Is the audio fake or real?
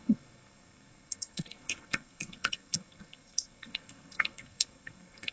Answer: fake